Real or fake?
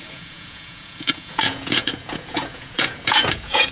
fake